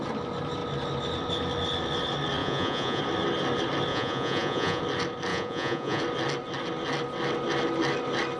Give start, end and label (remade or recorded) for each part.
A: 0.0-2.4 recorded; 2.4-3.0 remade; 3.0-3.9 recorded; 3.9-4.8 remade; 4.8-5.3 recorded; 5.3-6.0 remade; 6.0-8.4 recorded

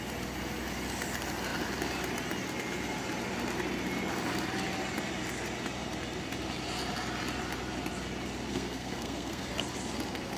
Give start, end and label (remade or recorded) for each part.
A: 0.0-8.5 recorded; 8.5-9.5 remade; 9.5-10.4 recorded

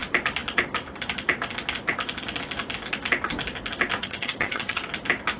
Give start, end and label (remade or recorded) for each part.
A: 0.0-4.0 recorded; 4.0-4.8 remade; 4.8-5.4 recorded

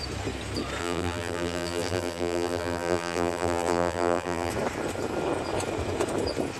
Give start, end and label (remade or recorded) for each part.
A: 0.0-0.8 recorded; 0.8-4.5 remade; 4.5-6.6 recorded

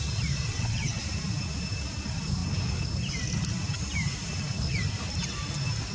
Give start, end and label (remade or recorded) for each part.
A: 0.0-0.5 recorded; 0.5-1.0 remade; 1.0-5.9 recorded

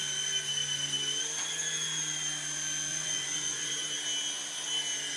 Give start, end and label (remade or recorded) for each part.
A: 0.0-2.9 recorded; 2.9-3.7 remade; 3.7-5.2 recorded

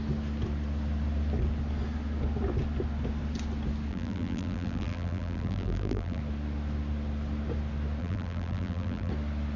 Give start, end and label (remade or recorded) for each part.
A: 0.0-3.9 recorded; 3.9-6.2 remade; 6.2-8.0 recorded; 8.0-9.1 remade; 9.1-9.6 recorded